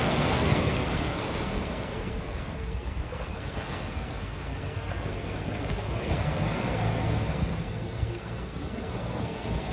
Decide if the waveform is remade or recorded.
remade